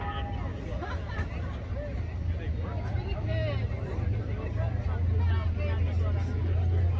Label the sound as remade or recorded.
recorded